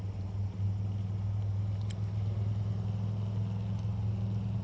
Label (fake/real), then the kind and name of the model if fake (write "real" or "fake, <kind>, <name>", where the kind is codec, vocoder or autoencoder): real